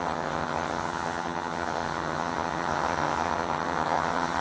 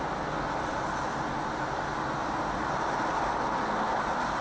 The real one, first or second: second